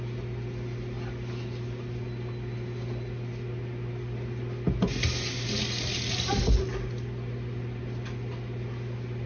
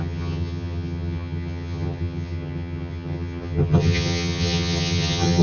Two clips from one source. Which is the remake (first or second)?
second